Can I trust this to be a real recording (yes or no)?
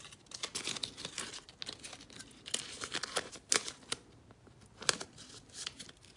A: yes